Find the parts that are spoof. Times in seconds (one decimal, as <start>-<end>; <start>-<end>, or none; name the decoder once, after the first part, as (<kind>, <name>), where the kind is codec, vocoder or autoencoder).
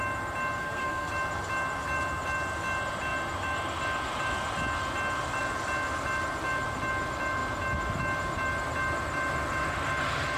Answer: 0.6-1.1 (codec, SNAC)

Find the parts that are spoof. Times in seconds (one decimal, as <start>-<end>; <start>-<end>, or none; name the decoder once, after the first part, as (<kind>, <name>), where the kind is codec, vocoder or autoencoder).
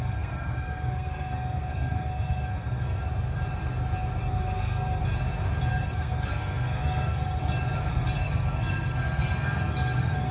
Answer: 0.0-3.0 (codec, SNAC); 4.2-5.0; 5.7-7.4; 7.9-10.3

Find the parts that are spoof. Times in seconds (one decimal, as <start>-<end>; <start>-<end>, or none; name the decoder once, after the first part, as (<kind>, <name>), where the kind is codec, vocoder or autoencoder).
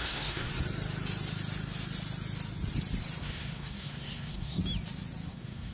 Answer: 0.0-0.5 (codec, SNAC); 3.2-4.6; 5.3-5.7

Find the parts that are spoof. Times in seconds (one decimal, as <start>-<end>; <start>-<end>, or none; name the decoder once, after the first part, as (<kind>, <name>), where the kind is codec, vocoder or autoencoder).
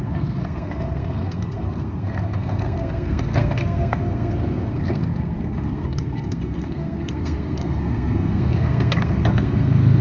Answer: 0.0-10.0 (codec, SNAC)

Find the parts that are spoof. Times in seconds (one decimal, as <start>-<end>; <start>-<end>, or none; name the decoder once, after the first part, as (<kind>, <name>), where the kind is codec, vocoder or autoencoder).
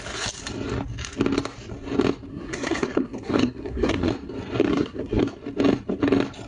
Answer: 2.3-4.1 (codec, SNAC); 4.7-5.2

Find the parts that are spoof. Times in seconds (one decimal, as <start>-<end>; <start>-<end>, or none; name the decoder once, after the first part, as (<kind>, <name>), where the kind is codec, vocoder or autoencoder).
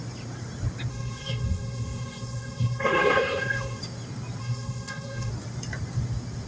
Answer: 0.9-3.8 (codec, SNAC); 4.4-5.3